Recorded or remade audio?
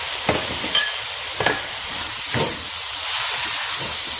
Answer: remade